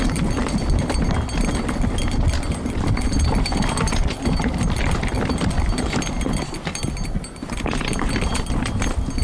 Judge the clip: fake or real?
real